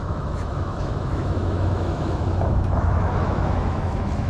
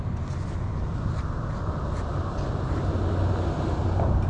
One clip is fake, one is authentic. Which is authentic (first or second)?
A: second